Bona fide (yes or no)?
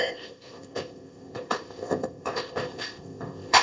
no